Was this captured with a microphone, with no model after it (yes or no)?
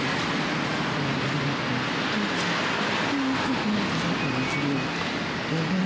yes